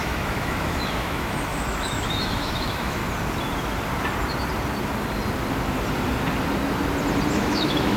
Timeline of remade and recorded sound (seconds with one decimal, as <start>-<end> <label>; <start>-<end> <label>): 0.0-3.0 remade; 3.0-7.3 recorded; 7.3-8.0 remade